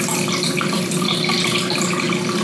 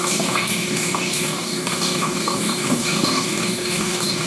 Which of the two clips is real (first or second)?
first